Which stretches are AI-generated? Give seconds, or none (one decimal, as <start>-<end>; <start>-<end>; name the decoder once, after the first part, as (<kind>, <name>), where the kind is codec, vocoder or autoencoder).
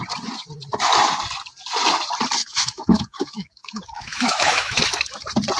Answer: 2.4-4.8 (autoencoder, DAC-VAE)